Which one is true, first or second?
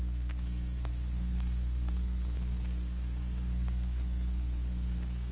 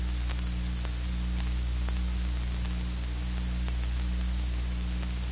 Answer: second